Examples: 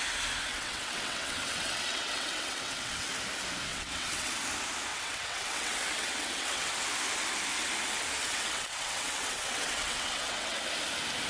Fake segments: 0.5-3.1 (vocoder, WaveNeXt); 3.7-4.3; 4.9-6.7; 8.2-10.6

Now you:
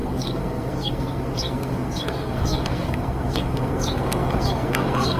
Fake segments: 0.0-5.2 (codec, SNAC)

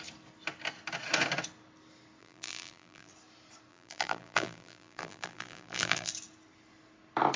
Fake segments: 2.2-3.1 (vocoder, BigVGAN v2); 3.7-6.1

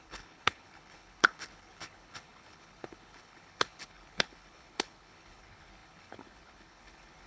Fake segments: 0.0-7.3 (codec, HILCodec)